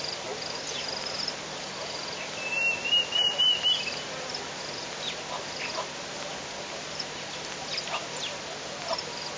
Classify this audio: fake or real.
real